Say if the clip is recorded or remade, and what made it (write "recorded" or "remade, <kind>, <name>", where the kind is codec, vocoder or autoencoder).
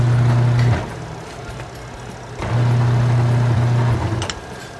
recorded